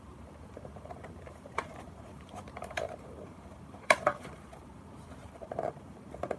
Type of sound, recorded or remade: remade